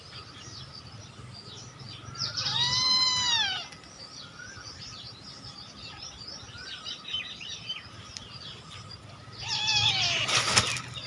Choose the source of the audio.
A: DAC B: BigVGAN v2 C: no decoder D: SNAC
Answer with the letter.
B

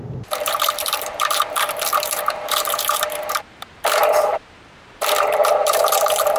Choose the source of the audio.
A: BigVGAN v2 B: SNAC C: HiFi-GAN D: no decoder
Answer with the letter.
A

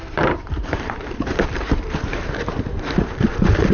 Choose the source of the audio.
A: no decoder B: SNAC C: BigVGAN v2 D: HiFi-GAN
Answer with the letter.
C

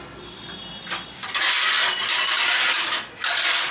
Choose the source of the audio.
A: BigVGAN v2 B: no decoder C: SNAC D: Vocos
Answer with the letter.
B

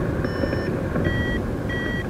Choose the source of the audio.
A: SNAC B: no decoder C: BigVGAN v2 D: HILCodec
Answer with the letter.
B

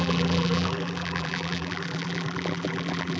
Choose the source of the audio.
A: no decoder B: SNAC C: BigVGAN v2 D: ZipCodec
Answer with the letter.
C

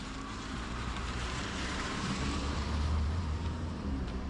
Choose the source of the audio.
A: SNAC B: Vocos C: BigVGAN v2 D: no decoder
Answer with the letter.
C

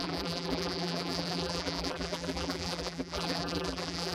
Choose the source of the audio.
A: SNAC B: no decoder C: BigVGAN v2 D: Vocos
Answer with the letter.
C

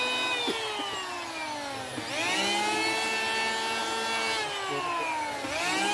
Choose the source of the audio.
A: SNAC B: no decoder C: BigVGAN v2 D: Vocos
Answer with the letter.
B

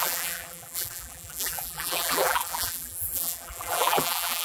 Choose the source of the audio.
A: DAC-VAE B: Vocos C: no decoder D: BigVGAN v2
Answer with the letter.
D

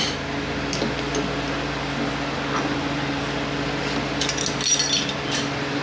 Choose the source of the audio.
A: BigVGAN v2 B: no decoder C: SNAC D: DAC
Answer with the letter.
B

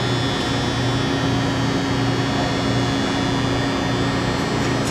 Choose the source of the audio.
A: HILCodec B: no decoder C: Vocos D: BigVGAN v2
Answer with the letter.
B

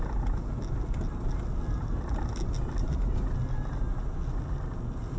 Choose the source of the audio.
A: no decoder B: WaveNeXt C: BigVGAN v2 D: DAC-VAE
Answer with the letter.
A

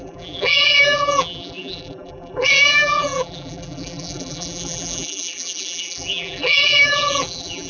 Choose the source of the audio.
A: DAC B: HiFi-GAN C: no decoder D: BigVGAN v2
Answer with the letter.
D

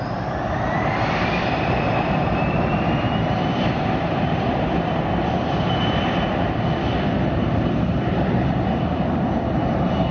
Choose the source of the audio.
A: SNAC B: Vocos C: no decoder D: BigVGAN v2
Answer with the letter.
D